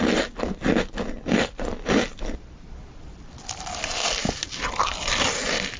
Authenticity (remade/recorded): recorded